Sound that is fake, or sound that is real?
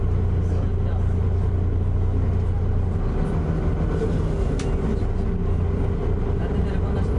real